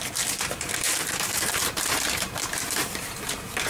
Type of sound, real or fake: fake